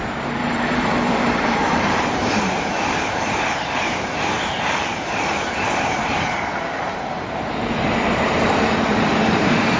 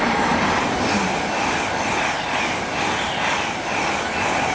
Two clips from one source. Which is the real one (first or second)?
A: second